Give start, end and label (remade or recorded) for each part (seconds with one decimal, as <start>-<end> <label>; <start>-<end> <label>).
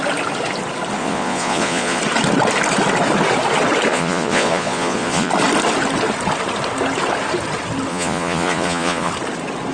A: 0.0-1.0 recorded; 1.0-2.0 remade; 2.0-3.9 recorded; 3.9-5.3 remade; 5.3-7.9 recorded; 7.9-9.1 remade; 9.1-9.7 recorded